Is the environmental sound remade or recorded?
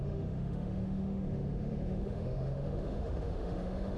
remade